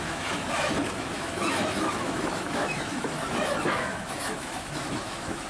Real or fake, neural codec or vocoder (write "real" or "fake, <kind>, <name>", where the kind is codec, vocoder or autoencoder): fake, autoencoder, DAC-VAE